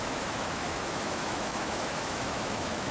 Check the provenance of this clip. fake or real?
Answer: fake